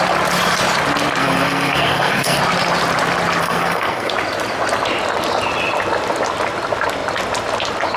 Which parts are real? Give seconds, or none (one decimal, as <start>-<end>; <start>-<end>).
0.0-1.2; 2.4-3.4; 4.1-8.0